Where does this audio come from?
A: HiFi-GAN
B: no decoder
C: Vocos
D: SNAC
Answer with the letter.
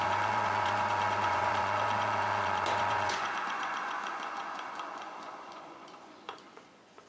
C